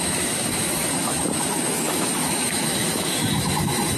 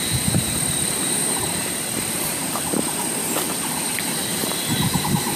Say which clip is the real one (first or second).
second